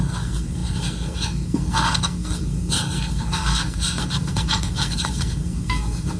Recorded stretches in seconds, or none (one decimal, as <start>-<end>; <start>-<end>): none